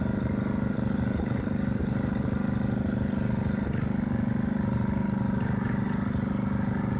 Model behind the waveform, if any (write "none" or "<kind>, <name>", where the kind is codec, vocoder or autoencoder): none